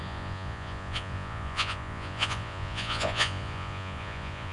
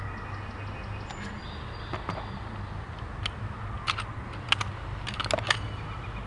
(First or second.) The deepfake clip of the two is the first